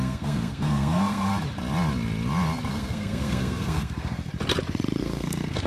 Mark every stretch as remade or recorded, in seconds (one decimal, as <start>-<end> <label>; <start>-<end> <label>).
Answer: 0.0-1.3 remade; 1.3-2.7 recorded; 2.7-4.3 remade; 4.3-5.0 recorded; 5.0-5.7 remade